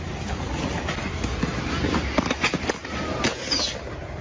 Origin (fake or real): real